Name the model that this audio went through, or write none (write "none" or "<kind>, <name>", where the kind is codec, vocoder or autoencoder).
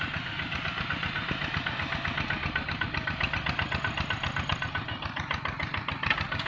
none